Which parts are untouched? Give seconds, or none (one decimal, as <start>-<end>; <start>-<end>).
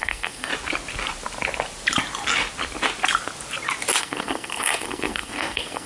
0.5-4.0